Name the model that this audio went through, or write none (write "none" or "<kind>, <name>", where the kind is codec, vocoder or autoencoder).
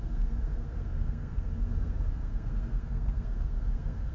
codec, SNAC